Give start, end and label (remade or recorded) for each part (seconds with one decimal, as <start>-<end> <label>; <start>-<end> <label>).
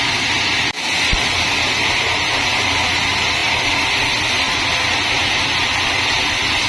0.0-6.7 recorded